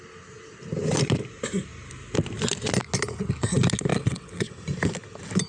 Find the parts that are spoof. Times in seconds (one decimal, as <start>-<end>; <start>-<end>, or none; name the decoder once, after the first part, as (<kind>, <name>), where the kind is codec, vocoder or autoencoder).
3.9-4.5 (vocoder, WaveNeXt)